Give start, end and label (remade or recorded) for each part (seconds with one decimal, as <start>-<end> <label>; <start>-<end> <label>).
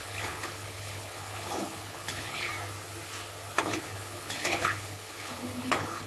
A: 0.0-2.5 remade; 2.5-3.6 recorded; 3.6-6.1 remade